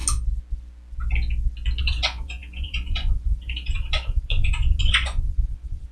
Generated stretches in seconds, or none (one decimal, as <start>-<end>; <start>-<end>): 1.8-5.9